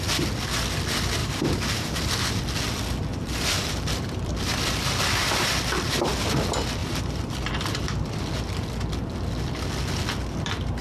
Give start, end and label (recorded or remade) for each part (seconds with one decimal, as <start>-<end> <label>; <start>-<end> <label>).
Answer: 0.0-1.2 recorded; 1.2-2.1 remade; 2.1-3.1 recorded; 3.1-4.3 remade; 4.3-6.8 recorded; 6.8-7.5 remade; 7.5-10.8 recorded